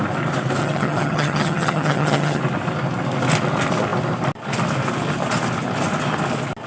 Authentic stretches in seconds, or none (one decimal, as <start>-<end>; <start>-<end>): 0.0-0.6; 2.4-6.7